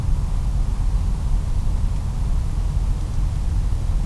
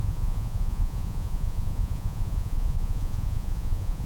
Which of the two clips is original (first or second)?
first